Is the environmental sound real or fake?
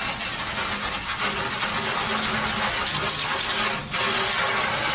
real